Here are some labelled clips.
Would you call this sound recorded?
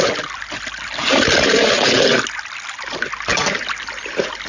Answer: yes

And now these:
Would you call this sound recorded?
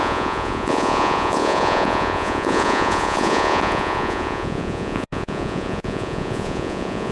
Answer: no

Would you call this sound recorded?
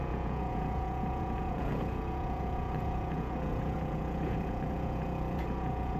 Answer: no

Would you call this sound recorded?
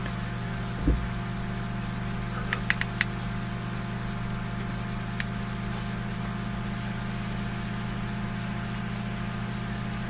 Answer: yes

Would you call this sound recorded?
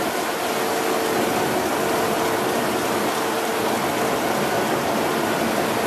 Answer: yes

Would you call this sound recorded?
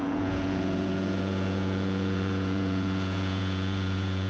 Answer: no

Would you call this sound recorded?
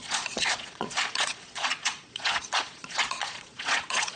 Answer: no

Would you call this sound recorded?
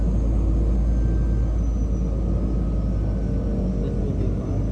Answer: yes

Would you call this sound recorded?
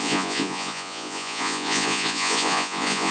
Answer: no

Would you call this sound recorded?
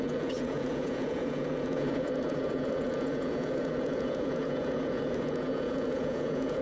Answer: no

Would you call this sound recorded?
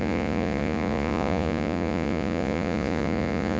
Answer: no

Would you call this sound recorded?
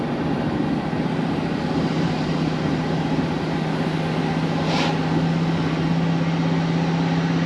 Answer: yes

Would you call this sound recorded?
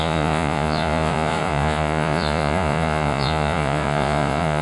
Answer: no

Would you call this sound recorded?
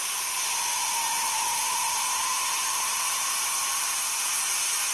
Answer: yes